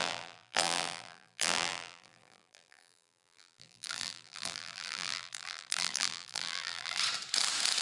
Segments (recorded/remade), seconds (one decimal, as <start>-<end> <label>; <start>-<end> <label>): 0.0-7.0 remade; 7.0-7.8 recorded